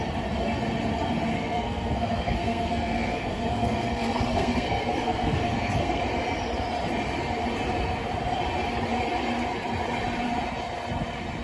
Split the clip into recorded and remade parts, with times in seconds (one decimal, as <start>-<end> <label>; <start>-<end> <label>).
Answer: 0.0-1.3 recorded; 1.3-6.0 remade; 6.0-11.4 recorded